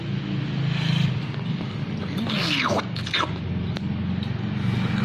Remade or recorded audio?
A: recorded